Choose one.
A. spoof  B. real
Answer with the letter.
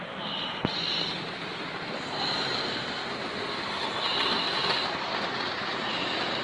B